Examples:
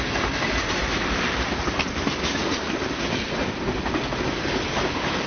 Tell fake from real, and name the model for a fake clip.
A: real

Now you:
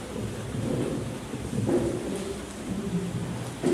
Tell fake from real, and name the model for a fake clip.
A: real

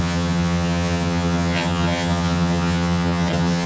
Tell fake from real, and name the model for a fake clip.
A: fake, vocoder, HiFi-GAN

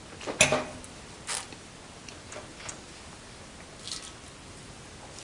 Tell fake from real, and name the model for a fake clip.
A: real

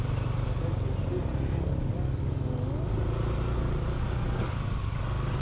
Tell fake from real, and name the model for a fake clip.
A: real